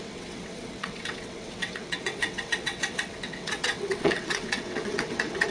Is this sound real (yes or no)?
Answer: no